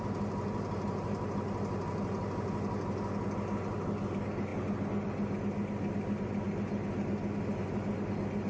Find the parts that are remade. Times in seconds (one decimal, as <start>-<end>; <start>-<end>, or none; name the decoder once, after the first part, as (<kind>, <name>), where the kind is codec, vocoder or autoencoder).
none